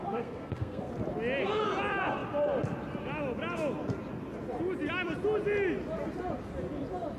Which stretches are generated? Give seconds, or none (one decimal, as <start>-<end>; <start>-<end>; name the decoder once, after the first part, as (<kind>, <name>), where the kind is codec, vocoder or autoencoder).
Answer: 0.0-0.9 (codec, SNAC)